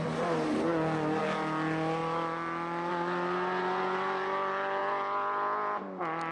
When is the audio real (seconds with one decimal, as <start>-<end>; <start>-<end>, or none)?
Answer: 0.0-6.3